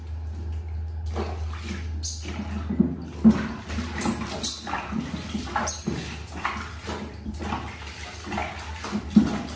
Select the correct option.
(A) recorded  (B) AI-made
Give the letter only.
A